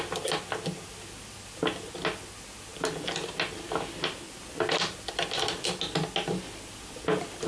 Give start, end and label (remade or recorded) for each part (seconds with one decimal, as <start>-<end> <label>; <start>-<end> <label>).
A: 0.0-7.5 recorded